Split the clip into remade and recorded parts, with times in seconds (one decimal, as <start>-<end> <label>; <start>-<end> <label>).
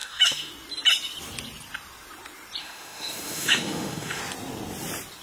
0.0-0.5 remade; 0.5-2.6 recorded; 2.6-4.2 remade; 4.2-5.2 recorded